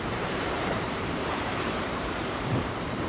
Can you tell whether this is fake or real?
fake